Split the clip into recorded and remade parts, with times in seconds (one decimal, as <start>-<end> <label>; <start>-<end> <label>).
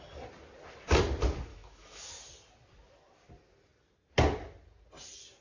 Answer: 0.0-1.5 recorded; 1.5-2.1 remade; 2.1-5.4 recorded